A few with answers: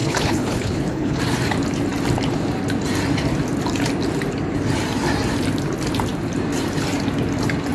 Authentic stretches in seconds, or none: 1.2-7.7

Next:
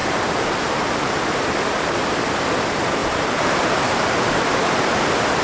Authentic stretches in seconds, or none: none

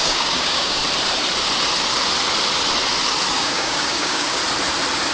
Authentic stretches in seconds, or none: 0.8-3.3; 4.4-5.1